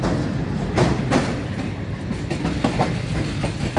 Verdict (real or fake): real